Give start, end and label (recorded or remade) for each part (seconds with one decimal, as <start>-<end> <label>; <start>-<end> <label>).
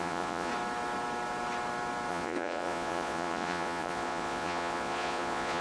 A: 0.0-0.5 remade; 0.5-2.1 recorded; 2.1-5.6 remade